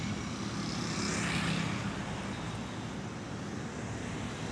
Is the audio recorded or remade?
recorded